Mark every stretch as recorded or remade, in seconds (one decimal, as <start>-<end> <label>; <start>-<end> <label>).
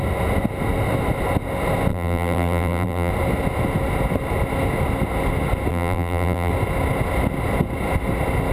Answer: 0.0-1.9 recorded; 1.9-3.1 remade; 3.1-5.7 recorded; 5.7-6.5 remade; 6.5-8.5 recorded